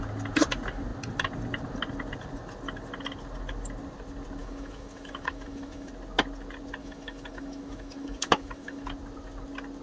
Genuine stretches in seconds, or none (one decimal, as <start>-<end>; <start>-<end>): 0.0-4.4; 5.9-6.8; 8.9-9.8